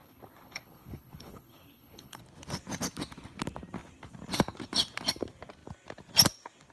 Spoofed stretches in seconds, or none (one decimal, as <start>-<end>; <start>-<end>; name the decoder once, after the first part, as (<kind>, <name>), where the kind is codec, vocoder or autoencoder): 0.0-2.2 (codec, HILCodec)